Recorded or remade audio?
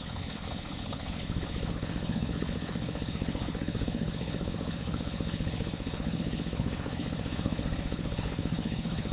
remade